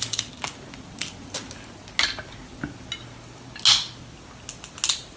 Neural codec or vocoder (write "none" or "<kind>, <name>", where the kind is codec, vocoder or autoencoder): none